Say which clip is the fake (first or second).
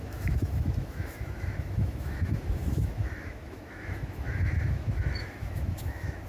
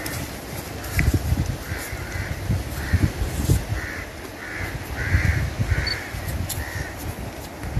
first